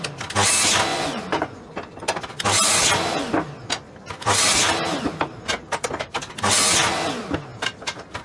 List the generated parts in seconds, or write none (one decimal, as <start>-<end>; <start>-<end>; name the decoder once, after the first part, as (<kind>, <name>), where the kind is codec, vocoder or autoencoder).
0.9-1.6 (vocoder, Vocos)